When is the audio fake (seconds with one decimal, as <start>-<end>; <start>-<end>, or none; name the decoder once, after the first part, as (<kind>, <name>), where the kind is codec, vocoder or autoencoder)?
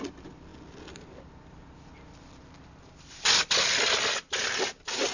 none